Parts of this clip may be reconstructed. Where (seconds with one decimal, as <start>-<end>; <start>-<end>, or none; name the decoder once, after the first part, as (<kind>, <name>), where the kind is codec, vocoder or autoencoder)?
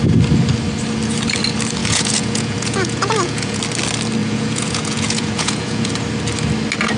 1.8-3.6 (vocoder, Vocos); 4.2-5.9